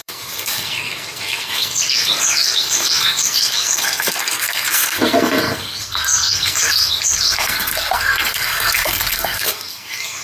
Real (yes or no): no